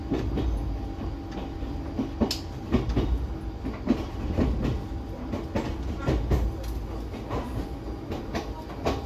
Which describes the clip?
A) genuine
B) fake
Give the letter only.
A